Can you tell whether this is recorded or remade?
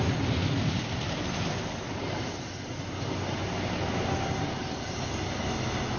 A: recorded